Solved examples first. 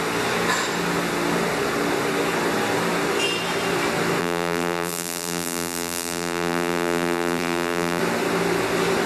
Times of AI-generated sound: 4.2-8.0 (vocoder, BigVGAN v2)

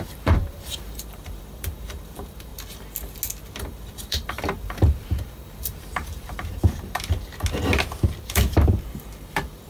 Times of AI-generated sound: 0.0-2.5 (vocoder, BigVGAN v2); 3.6-7.3; 8.2-9.7

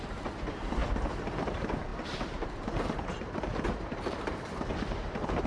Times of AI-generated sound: 0.0-0.8 (vocoder, BigVGAN v2); 1.3-5.5